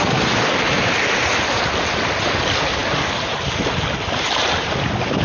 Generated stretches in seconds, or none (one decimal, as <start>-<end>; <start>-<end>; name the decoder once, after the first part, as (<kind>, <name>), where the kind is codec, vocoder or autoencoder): none